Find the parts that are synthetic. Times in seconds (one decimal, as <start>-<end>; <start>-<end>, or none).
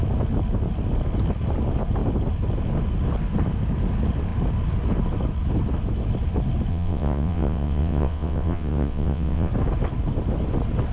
6.7-9.5